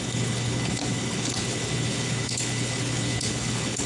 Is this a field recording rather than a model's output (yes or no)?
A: no